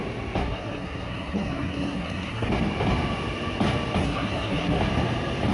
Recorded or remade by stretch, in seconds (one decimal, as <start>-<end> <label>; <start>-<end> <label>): 0.0-0.4 recorded; 0.4-2.5 remade; 2.5-4.0 recorded; 4.0-4.8 remade; 4.8-5.5 recorded